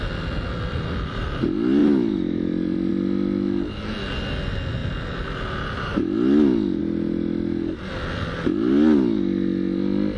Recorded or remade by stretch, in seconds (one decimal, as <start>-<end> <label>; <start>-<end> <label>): 0.0-1.8 recorded; 1.8-2.9 remade; 2.9-10.2 recorded